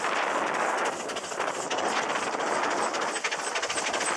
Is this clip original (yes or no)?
yes